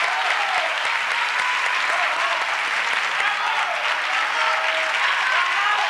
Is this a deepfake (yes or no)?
no